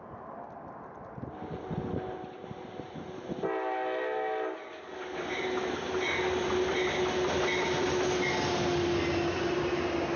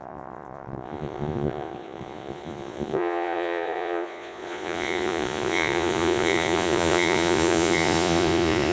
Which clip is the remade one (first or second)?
second